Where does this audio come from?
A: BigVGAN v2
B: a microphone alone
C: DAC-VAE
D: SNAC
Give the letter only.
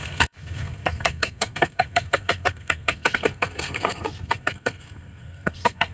D